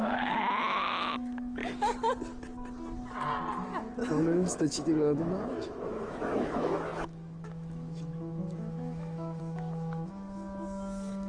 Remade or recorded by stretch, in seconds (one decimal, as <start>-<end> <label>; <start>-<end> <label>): 0.0-1.6 remade; 1.6-4.2 recorded; 4.2-11.3 remade